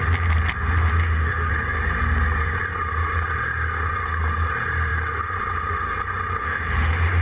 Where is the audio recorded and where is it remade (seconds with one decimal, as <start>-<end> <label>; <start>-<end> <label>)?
0.0-1.0 recorded; 1.0-1.5 remade; 1.5-6.4 recorded; 6.4-7.2 remade